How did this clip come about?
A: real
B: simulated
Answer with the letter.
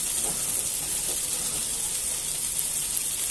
A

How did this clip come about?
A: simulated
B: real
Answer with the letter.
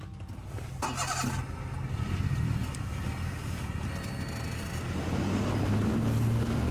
B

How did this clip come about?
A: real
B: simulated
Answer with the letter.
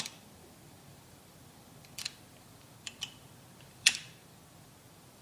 B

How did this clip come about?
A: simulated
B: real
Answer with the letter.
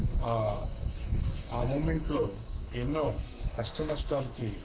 A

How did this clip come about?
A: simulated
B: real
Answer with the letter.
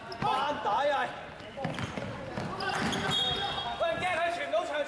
B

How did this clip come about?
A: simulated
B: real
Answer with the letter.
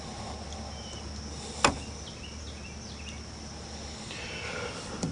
B